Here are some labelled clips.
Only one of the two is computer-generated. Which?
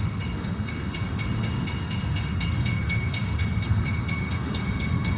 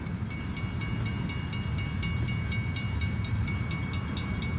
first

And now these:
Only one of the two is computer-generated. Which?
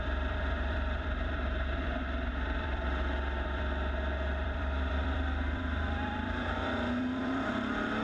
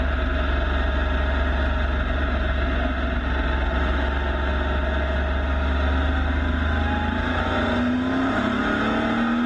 first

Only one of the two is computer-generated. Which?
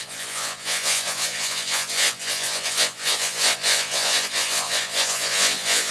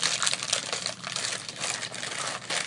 first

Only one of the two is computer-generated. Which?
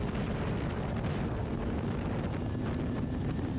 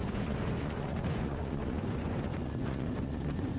second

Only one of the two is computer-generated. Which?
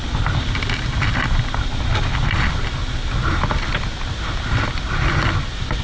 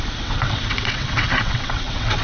second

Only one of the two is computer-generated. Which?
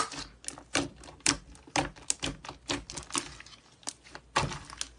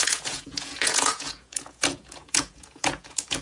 second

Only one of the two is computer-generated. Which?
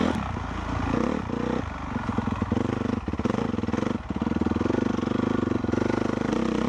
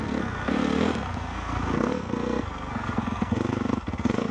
second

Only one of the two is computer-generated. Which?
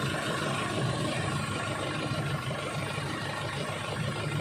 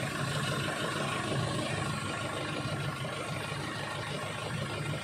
first